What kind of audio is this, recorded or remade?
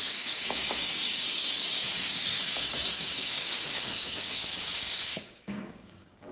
remade